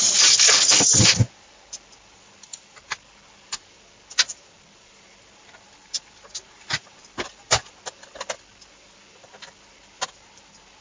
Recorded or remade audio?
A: recorded